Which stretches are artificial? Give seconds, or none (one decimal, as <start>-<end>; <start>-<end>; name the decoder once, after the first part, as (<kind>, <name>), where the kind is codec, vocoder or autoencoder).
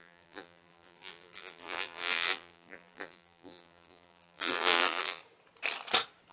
0.0-5.2 (vocoder, BigVGAN v2)